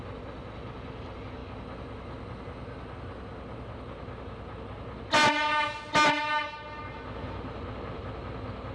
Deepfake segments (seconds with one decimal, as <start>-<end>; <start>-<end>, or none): none